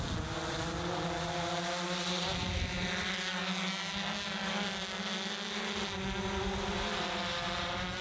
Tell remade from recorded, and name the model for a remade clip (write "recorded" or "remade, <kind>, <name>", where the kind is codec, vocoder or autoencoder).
recorded